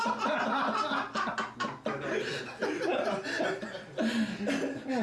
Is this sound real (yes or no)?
yes